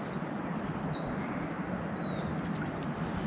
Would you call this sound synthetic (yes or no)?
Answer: no